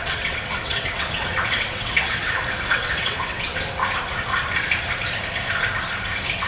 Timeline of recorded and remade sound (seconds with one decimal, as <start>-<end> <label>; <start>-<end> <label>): 0.0-2.2 remade; 2.2-2.7 recorded; 2.7-3.8 remade; 3.8-6.5 recorded